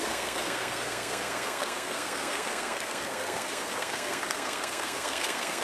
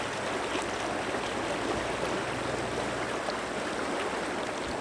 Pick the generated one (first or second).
first